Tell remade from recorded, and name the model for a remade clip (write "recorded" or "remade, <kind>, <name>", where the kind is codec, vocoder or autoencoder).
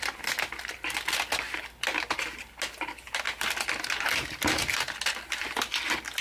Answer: recorded